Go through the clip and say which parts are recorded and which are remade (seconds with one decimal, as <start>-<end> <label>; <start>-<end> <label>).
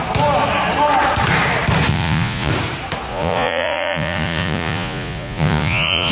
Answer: 0.0-1.9 recorded; 1.9-2.5 remade; 2.5-3.1 recorded; 3.1-6.1 remade